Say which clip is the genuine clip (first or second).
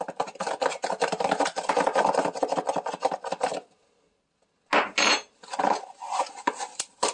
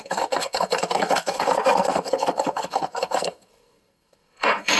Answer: first